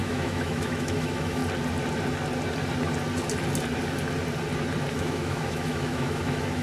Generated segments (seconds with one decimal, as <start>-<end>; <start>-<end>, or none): 0.0-1.4; 4.9-6.6